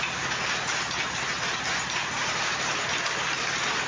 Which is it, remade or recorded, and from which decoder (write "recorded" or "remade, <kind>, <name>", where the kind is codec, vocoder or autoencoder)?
recorded